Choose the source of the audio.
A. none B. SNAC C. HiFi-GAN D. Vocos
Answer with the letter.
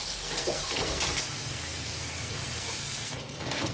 B